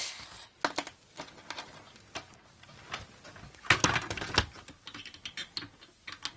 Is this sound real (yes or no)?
yes